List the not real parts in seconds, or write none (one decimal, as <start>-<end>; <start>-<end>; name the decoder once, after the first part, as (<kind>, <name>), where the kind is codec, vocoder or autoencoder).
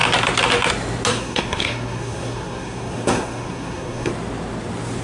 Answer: 1.1-4.1 (codec, SNAC)